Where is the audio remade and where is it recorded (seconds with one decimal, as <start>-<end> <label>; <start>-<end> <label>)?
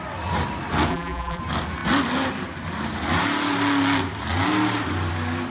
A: 0.0-0.9 recorded; 0.9-1.4 remade; 1.4-5.5 recorded